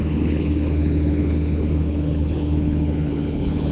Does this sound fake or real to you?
fake